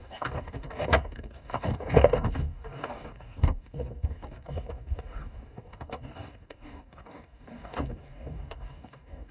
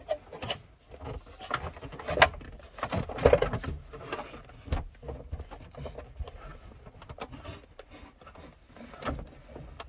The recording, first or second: second